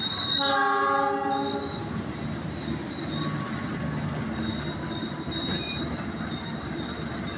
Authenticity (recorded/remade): recorded